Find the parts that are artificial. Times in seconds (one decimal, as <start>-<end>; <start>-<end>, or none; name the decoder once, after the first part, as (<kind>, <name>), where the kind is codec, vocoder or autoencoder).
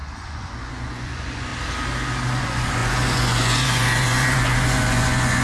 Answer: 0.0-1.5 (vocoder, Vocos); 2.4-5.4